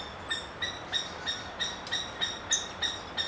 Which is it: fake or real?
real